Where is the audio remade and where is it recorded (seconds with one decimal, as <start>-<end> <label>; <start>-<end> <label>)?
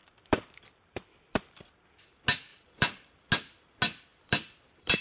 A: 0.0-1.9 remade; 1.9-2.5 recorded; 2.5-3.3 remade; 3.3-4.1 recorded; 4.1-5.0 remade